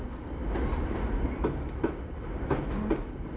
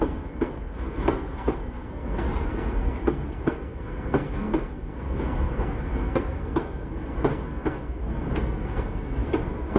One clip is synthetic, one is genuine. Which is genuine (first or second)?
first